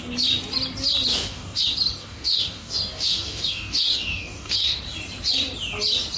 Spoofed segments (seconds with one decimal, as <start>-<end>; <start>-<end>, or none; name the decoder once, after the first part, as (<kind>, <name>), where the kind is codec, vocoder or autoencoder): 1.1-1.6 (codec, DAC); 2.0-4.8